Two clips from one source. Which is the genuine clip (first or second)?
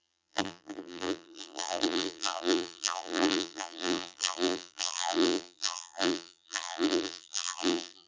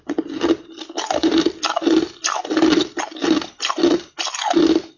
second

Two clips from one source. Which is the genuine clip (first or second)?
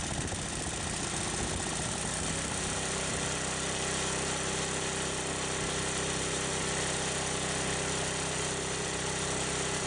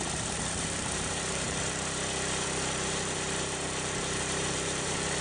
first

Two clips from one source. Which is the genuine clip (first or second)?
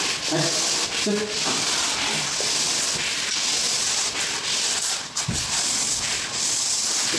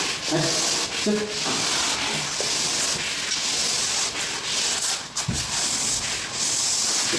second